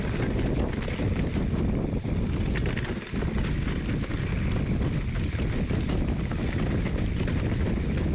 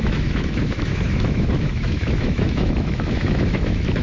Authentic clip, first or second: first